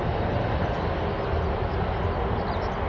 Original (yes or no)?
yes